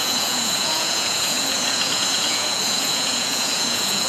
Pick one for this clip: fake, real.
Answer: fake